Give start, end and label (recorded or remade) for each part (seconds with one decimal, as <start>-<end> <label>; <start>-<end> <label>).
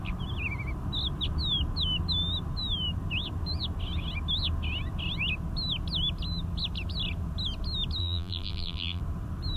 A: 0.0-8.0 recorded; 8.0-9.0 remade; 9.0-9.6 recorded